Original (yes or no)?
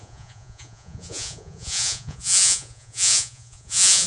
no